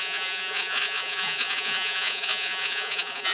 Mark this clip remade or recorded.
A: remade